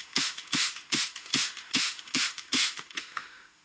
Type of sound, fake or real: fake